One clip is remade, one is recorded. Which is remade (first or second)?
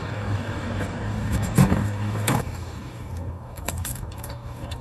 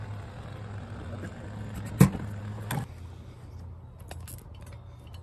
first